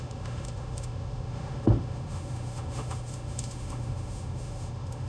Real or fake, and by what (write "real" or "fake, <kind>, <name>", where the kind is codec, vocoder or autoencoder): fake, autoencoder, DAC-VAE